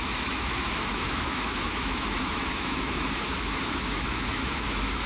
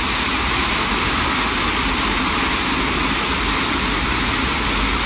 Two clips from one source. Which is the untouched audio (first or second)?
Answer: second